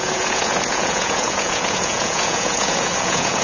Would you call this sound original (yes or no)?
no